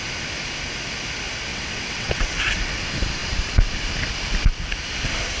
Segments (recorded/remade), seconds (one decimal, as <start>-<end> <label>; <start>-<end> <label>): 0.0-1.5 recorded; 1.5-2.3 remade; 2.3-5.4 recorded